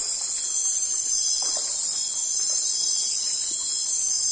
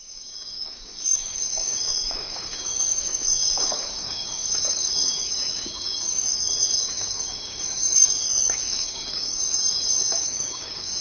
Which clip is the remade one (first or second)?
second